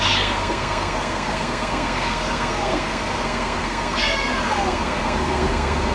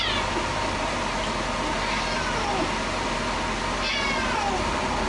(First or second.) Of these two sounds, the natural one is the second